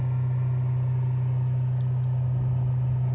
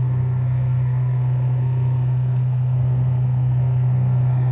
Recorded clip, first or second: first